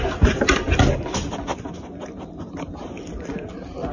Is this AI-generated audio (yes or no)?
no